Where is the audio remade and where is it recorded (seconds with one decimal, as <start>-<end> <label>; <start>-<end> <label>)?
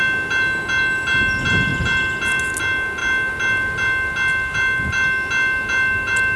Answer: 0.0-6.4 recorded